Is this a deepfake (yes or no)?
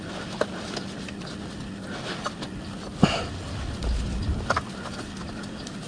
no